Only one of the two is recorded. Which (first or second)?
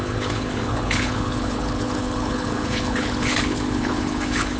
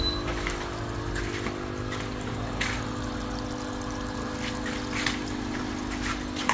second